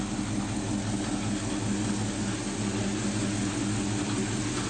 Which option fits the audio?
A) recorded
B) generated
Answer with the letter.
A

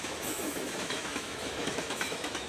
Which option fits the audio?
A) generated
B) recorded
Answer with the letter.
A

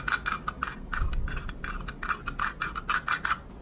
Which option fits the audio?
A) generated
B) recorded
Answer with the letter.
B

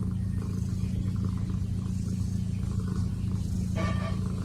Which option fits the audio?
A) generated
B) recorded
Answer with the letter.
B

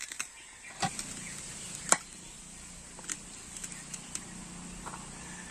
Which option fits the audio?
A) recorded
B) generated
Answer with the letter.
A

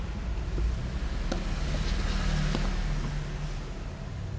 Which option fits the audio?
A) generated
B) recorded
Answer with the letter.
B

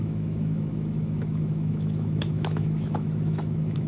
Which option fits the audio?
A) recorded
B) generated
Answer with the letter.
B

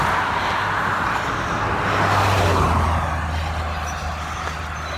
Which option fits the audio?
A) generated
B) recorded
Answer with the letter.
B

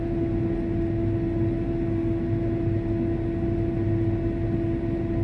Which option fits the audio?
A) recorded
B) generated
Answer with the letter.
A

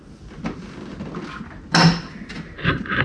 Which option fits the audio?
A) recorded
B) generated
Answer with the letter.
A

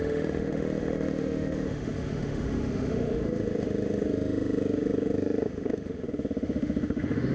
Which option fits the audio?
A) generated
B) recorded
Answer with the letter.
A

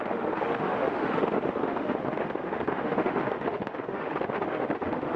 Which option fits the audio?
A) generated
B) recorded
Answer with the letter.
A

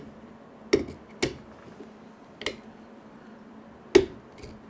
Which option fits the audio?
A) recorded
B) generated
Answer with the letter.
A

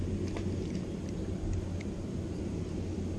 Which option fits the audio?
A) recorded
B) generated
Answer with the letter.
A